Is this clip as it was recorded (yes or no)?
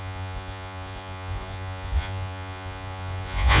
no